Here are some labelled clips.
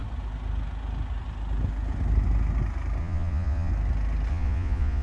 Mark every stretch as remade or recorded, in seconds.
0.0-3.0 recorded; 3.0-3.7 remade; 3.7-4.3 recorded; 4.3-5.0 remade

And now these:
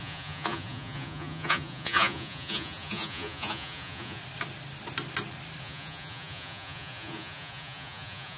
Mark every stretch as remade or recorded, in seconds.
0.0-4.2 remade; 4.2-5.6 recorded; 5.6-8.4 remade